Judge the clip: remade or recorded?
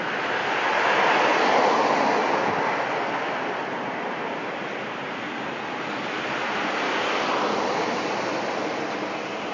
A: recorded